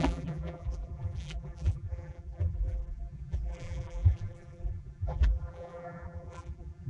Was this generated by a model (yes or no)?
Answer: yes